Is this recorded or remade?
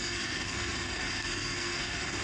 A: remade